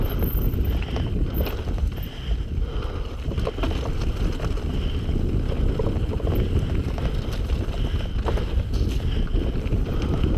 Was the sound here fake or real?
real